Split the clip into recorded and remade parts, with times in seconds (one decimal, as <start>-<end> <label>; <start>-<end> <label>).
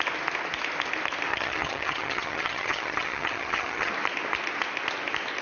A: 0.0-1.3 recorded; 1.3-3.9 remade; 3.9-5.4 recorded